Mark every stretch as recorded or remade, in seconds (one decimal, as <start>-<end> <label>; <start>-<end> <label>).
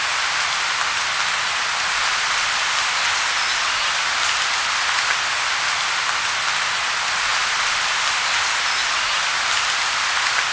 0.0-10.5 recorded